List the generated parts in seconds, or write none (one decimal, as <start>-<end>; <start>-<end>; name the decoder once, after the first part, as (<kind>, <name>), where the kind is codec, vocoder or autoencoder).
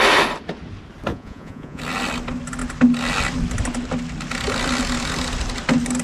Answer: 1.1-1.8 (vocoder, Vocos)